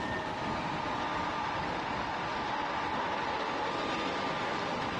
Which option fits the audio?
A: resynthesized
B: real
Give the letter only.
B